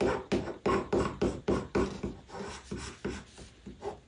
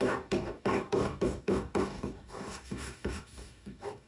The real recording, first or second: first